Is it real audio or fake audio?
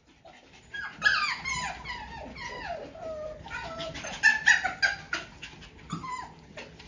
real